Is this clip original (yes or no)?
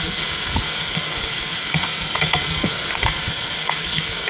no